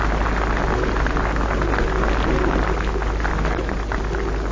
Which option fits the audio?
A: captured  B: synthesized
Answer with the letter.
A